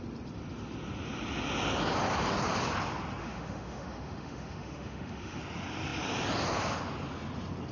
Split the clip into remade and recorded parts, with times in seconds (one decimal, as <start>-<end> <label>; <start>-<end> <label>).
0.0-3.2 recorded; 3.2-5.4 remade; 5.4-7.7 recorded